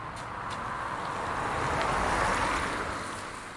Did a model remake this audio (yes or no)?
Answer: no